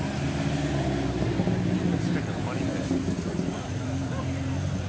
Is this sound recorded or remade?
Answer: recorded